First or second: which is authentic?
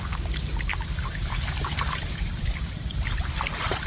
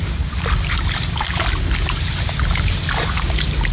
second